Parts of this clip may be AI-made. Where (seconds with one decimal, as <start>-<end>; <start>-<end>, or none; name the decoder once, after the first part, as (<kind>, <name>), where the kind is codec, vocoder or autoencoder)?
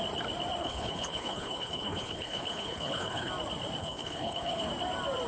0.6-3.3 (codec, HILCodec); 3.8-4.7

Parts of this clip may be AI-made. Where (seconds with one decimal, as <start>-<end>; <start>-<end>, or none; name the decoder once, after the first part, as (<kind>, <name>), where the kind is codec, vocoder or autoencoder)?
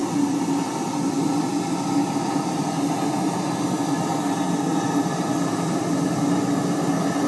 none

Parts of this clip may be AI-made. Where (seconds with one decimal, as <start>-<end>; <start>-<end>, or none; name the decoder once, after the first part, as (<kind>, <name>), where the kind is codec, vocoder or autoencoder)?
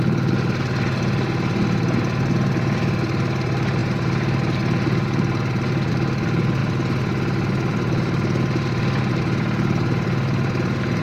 none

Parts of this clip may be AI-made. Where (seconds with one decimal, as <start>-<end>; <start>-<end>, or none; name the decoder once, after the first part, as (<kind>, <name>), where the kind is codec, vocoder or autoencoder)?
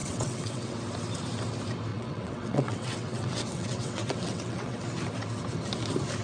0.0-0.8 (vocoder, WaveNeXt); 1.9-4.8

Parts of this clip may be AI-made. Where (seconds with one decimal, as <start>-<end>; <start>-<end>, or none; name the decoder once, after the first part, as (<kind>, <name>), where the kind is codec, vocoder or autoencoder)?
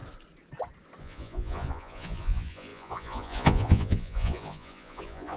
1.0-5.4 (vocoder, Vocos)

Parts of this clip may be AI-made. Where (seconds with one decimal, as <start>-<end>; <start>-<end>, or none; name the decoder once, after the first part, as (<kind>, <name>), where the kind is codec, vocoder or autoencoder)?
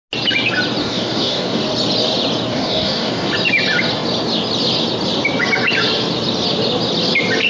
0.8-1.6 (codec, DAC); 2.5-3.3